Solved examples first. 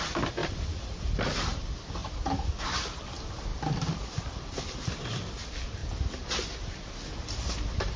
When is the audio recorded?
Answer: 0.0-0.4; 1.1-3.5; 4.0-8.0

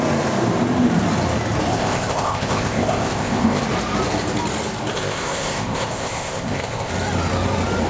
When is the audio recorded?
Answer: 0.0-1.7; 3.6-4.9; 6.9-7.9

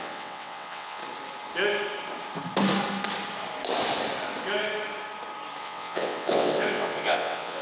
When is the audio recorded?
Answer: 1.0-5.6

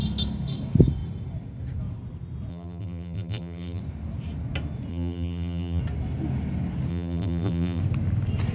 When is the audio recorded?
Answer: 0.0-2.5; 3.8-4.9; 5.8-6.9; 7.8-8.5

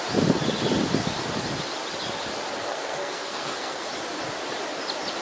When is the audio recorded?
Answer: 0.0-2.6; 3.9-5.2

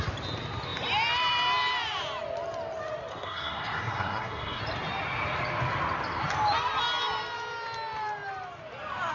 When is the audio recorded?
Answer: 0.0-3.1; 4.6-9.1